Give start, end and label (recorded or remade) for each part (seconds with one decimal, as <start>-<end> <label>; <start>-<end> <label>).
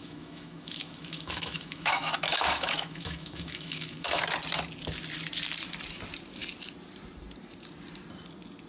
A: 0.0-4.2 remade; 4.2-8.7 recorded